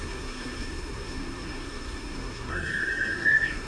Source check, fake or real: fake